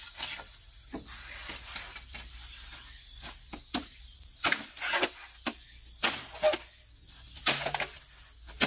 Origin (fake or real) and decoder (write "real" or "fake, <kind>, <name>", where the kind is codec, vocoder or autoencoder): real